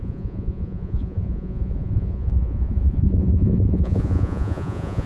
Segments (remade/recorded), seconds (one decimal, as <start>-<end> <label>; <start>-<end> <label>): 0.0-5.1 remade